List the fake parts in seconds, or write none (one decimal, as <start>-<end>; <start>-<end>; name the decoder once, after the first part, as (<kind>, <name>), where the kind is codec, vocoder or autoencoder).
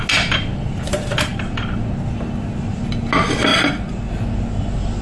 none